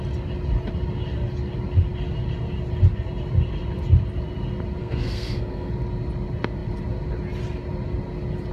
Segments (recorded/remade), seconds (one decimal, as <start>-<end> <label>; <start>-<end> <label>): 0.0-4.8 recorded; 4.8-5.7 remade; 5.7-8.5 recorded